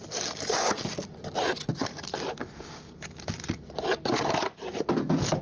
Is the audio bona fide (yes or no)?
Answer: yes